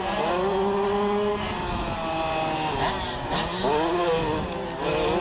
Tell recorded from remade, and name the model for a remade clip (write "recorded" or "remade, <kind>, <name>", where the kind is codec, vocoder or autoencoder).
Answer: recorded